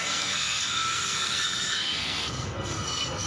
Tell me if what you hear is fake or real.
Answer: fake